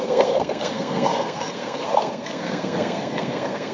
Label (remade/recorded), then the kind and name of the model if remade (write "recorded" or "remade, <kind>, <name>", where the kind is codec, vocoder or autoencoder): remade, codec, SNAC